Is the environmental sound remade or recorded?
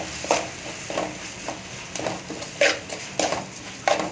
recorded